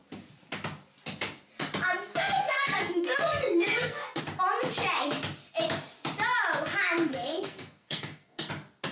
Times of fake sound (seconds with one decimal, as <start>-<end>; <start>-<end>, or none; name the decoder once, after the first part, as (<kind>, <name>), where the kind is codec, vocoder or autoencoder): 2.1-4.2 (codec, SNAC); 7.1-8.5